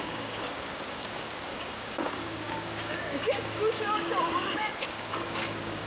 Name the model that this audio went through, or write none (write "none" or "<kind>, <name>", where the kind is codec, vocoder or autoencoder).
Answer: codec, DAC